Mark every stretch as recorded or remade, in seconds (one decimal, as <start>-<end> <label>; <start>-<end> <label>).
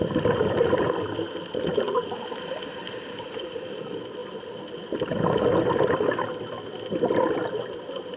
0.0-8.2 remade